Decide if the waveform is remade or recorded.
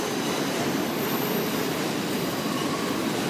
recorded